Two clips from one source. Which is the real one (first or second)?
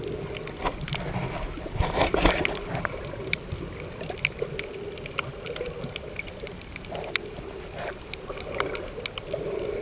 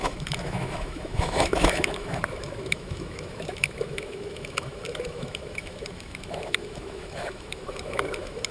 first